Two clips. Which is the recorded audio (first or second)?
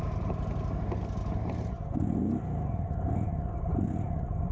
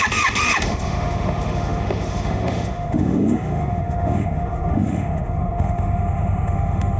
first